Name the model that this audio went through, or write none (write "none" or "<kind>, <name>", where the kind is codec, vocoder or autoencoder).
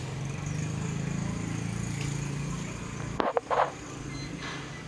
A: none